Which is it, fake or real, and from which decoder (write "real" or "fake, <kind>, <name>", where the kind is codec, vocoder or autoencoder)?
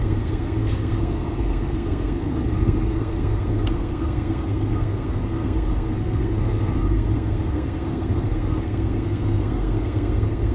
fake, codec, SNAC